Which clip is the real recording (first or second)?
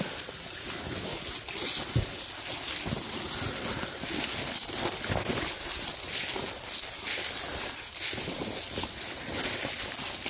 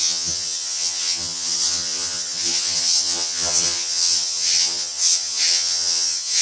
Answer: first